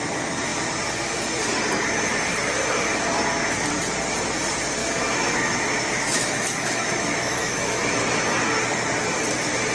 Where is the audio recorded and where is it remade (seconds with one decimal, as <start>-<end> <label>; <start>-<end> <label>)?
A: 0.0-4.8 recorded; 4.8-7.9 remade; 7.9-9.7 recorded